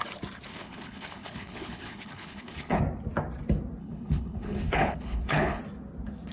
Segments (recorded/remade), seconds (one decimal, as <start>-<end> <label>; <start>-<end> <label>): 0.0-0.5 recorded; 0.5-2.8 remade; 2.8-3.8 recorded; 3.8-5.6 remade; 5.6-6.3 recorded